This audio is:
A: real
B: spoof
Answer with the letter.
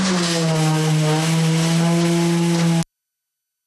A